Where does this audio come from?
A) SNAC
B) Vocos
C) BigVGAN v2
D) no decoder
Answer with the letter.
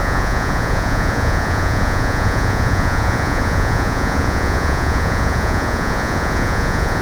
B